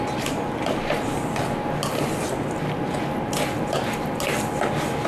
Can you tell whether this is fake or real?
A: real